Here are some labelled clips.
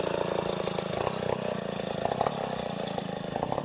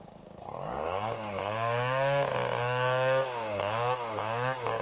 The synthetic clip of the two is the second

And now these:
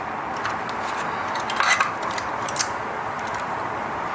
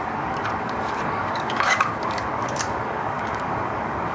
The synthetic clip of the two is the second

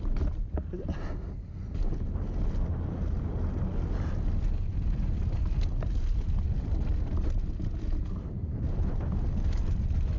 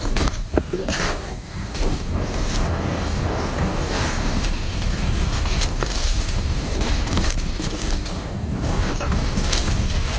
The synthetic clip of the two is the second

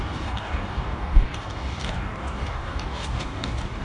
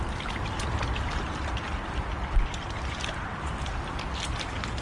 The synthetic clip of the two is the first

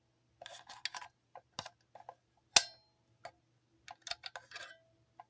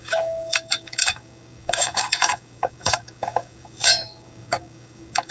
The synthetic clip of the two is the second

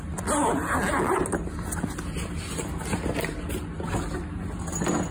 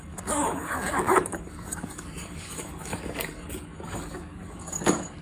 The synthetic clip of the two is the second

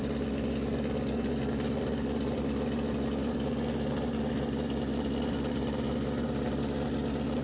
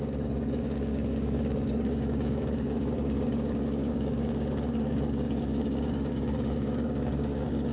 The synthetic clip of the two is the second